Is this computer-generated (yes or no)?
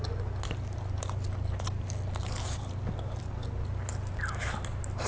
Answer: no